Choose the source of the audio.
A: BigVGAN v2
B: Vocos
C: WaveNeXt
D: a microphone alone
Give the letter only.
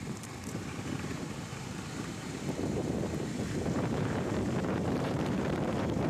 A